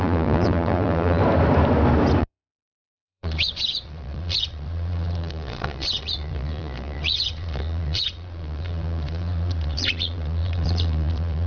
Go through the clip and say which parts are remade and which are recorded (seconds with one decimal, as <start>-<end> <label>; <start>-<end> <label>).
0.0-1.2 remade; 1.2-2.2 recorded; 2.2-11.5 remade